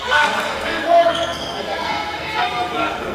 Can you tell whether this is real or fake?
fake